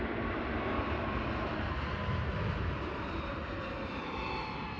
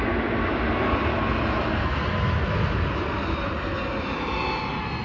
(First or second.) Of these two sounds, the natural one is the second